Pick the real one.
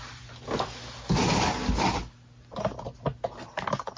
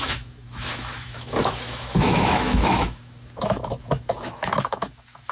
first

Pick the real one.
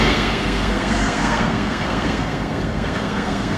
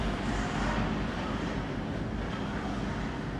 second